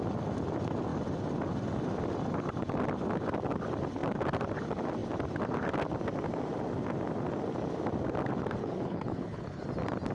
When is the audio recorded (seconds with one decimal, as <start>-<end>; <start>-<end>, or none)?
0.0-8.6; 9.6-10.1